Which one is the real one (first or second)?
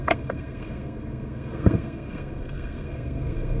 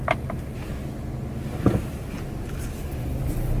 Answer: second